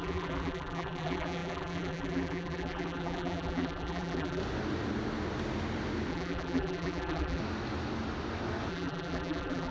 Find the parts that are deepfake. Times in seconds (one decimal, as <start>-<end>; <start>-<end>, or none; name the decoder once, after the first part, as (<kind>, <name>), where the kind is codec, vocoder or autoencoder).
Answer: 0.0-4.4 (vocoder, BigVGAN v2); 6.1-7.4; 8.7-9.7